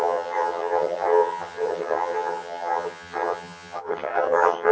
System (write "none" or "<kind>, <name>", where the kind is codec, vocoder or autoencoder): vocoder, HiFi-GAN